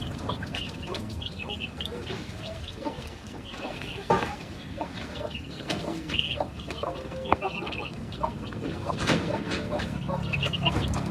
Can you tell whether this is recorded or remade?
remade